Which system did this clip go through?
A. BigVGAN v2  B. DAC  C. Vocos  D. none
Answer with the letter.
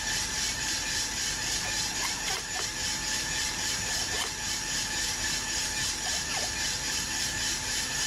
A